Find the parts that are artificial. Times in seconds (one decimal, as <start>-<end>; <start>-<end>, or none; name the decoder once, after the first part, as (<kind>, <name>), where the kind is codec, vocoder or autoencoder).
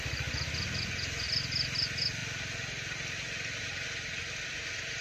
none